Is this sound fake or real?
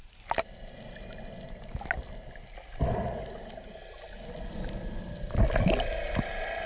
real